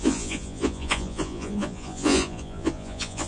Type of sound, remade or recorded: remade